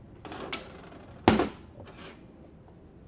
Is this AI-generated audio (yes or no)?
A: no